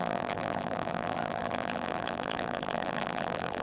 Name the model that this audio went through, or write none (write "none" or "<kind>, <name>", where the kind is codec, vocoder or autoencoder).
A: vocoder, BigVGAN v2